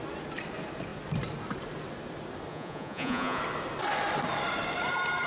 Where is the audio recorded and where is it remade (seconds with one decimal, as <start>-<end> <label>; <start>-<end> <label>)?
0.0-2.5 recorded; 2.5-3.4 remade; 3.4-5.3 recorded